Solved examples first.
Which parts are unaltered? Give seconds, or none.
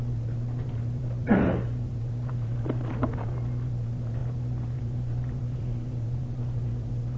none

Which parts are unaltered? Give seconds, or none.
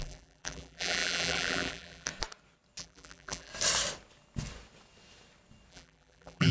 2.1-2.8; 3.5-5.7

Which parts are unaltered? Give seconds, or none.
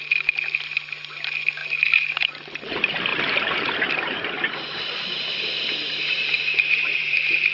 0.0-1.6; 2.1-3.1; 6.4-7.5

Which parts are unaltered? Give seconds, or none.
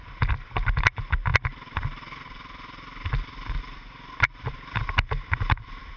0.0-1.3; 4.9-6.0